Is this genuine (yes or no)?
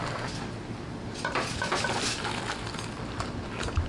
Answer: yes